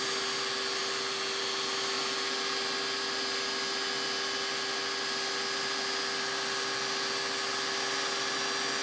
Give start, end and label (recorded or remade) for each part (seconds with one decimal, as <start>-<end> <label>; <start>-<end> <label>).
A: 0.0-8.8 recorded